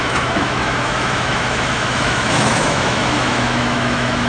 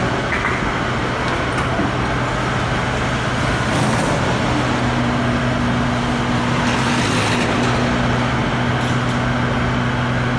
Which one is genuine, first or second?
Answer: second